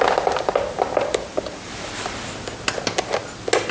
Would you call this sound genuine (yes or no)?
yes